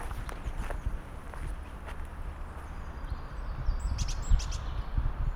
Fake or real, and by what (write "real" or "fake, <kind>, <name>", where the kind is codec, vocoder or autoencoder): real